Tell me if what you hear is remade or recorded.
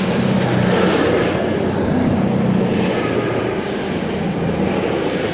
recorded